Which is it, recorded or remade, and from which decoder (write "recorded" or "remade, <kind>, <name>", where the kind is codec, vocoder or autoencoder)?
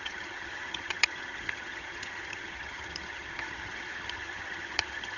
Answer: remade, vocoder, HiFi-GAN